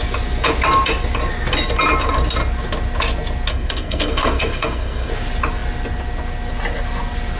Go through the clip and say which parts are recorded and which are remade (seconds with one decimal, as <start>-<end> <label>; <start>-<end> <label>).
0.0-3.5 recorded; 3.5-5.1 remade; 5.1-7.4 recorded